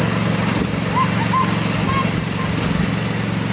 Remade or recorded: recorded